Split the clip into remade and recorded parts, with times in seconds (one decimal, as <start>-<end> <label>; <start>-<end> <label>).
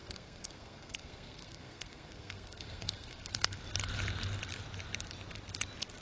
0.0-3.6 remade; 3.6-6.0 recorded